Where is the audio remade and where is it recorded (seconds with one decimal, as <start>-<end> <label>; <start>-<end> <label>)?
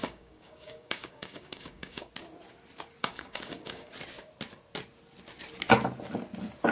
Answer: 0.0-2.1 remade; 2.1-3.0 recorded; 3.0-3.9 remade; 3.9-6.7 recorded